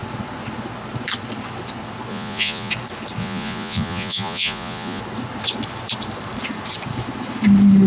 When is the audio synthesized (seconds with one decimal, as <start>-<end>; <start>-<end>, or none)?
2.1-2.7; 3.2-5.0